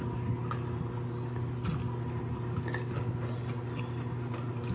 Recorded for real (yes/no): yes